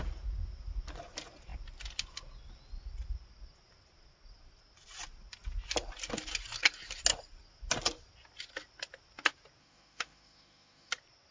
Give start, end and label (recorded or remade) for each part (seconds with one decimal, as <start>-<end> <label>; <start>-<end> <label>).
0.0-9.6 recorded; 9.6-10.9 remade; 10.9-11.3 recorded